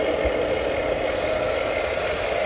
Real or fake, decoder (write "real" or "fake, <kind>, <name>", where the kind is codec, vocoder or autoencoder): real